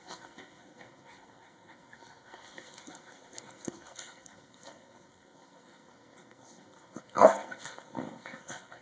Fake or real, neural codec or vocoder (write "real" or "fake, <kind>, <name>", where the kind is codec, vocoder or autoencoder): fake, codec, SNAC